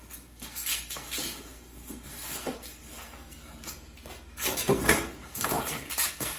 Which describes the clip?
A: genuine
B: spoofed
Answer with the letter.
B